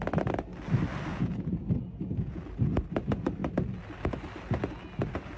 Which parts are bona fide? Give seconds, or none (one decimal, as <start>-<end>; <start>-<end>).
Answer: 0.0-1.1; 2.4-5.4